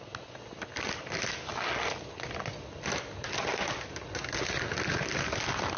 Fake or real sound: real